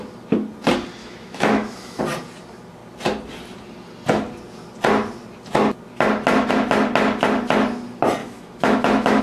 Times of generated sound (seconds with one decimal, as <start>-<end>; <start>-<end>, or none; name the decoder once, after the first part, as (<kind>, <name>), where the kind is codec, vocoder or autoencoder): 1.0-2.0 (autoencoder, DAC-VAE); 8.2-9.2